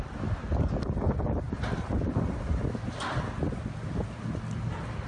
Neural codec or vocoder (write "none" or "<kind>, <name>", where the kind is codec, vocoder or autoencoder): none